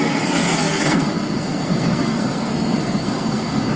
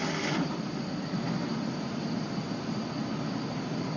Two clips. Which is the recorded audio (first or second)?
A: second